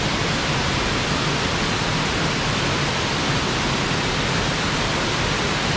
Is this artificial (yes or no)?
no